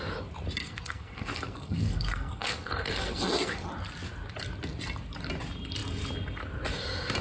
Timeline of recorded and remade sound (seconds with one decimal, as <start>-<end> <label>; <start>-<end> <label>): 0.0-0.6 recorded; 0.6-3.7 remade; 3.7-7.2 recorded